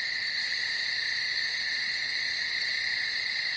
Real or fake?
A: real